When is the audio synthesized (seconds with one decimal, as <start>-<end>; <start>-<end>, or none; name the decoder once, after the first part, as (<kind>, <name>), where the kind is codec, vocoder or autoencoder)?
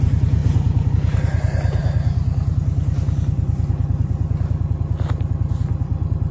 none